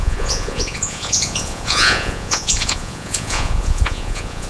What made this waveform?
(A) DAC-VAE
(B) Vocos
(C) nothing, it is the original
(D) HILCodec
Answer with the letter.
B